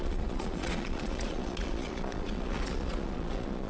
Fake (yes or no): yes